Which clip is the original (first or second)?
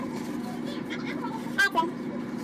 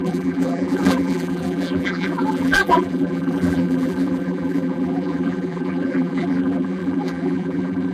first